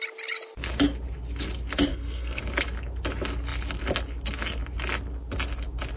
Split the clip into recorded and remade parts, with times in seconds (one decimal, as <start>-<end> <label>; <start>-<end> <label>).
0.0-1.9 recorded; 1.9-2.4 remade; 2.4-6.0 recorded